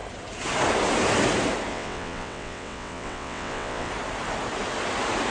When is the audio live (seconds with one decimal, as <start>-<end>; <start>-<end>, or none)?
0.0-1.7; 3.9-5.3